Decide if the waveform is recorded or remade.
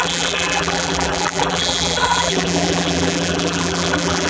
remade